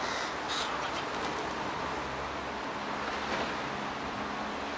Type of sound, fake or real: real